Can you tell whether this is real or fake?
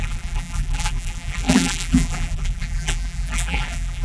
fake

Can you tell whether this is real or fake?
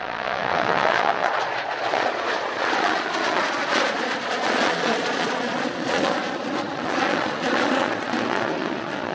fake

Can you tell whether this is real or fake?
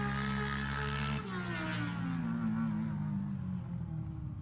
real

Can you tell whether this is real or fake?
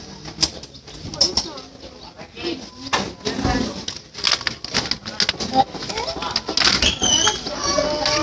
real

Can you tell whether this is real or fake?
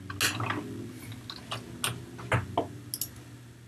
real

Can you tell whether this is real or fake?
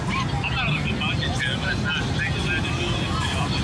real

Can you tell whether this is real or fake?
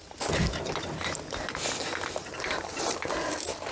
real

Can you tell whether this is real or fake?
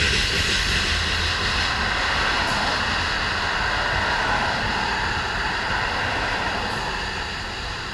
real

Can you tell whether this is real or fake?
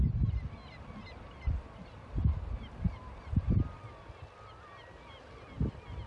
real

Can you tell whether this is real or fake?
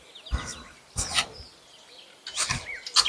real